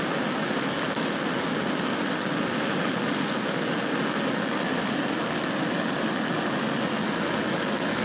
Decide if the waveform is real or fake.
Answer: real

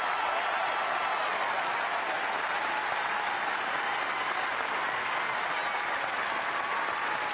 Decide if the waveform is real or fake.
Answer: real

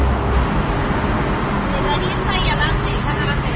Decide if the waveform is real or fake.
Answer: real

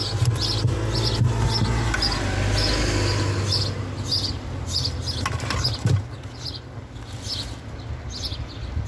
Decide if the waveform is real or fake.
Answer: real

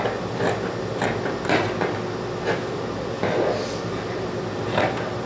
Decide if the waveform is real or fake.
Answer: real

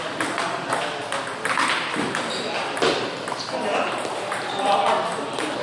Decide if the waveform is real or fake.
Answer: real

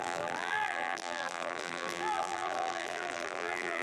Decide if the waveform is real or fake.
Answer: fake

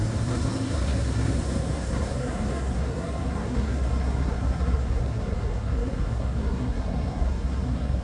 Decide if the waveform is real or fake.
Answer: fake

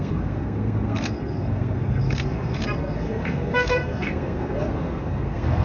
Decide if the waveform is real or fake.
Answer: fake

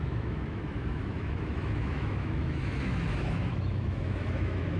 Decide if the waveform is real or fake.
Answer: fake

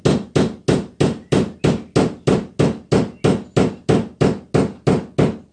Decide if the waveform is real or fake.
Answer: real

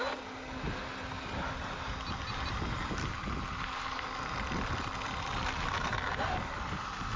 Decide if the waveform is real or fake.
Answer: real